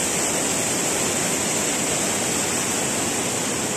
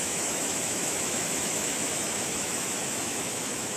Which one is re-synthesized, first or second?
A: second